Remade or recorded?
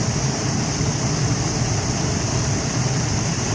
remade